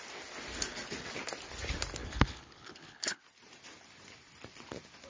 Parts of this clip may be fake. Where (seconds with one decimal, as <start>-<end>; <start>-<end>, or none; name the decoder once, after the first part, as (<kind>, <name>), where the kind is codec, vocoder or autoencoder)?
2.0-3.2 (codec, HILCodec)